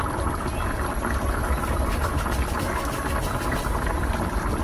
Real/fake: fake